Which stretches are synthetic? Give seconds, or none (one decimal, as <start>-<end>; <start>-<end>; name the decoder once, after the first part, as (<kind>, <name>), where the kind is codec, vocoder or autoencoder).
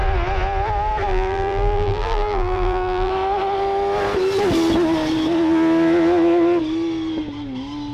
1.1-3.1 (vocoder, BigVGAN v2)